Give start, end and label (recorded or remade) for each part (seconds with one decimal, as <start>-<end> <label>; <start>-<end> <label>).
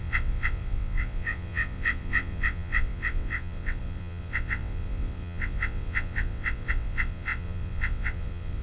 0.0-8.6 remade